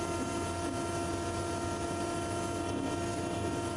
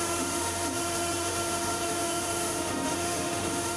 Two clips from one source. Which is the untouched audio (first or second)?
first